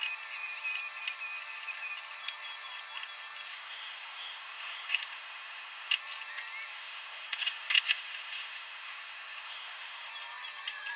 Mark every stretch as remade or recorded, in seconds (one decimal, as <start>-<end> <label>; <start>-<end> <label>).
0.0-3.5 recorded; 3.5-6.0 remade; 6.0-6.7 recorded; 6.7-10.1 remade; 10.1-11.0 recorded

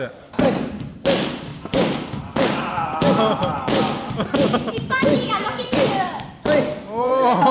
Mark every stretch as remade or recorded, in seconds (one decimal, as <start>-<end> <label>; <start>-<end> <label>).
0.0-1.5 recorded; 1.5-2.2 remade; 2.2-5.5 recorded; 5.5-7.1 remade; 7.1-7.5 recorded

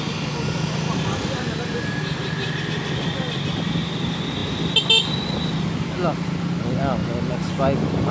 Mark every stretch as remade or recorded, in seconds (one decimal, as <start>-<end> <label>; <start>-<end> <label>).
0.0-8.1 recorded

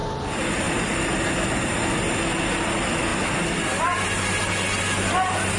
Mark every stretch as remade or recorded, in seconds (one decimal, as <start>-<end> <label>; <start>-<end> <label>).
0.0-5.6 recorded

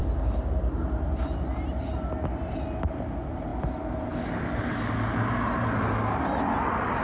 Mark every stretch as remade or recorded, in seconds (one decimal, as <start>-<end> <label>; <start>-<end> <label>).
0.0-7.0 recorded

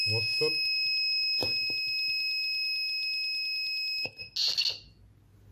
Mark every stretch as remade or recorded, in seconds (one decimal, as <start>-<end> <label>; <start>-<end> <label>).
0.0-5.5 recorded

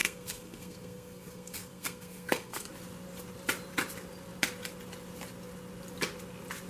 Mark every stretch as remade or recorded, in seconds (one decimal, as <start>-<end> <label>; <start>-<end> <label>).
0.0-2.7 remade; 2.7-6.7 recorded